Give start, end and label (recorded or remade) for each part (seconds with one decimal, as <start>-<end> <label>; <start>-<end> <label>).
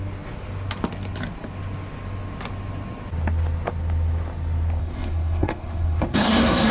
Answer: 0.0-4.8 recorded; 4.8-6.7 remade